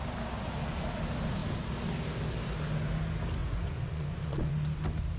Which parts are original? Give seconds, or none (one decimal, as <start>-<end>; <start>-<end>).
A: 0.0-3.4; 4.5-5.2